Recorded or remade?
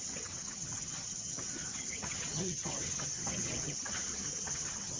remade